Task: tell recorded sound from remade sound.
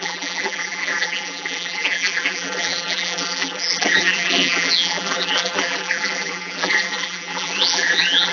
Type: remade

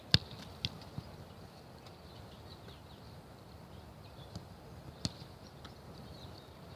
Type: recorded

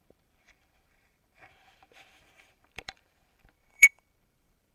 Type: remade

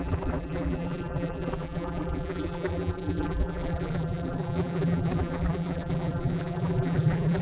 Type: remade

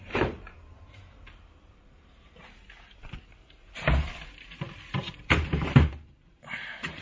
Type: remade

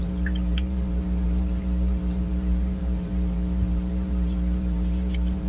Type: remade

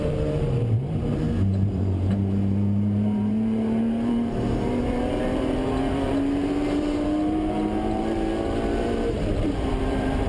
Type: remade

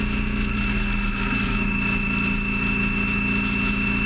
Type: recorded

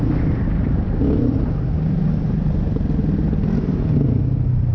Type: recorded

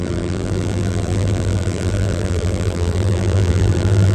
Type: remade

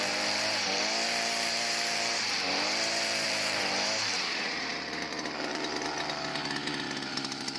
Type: remade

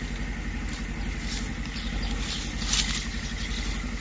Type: recorded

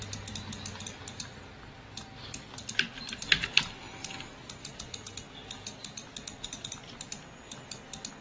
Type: recorded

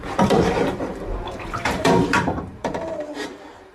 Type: remade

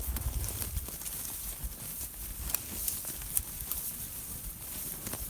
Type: recorded